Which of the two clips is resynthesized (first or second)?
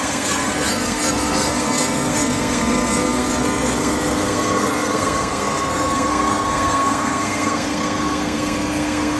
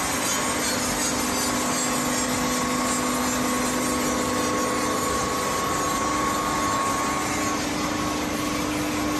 first